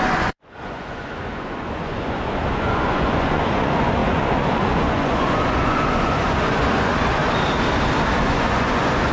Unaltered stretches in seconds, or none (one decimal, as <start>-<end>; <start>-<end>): 7.2-8.2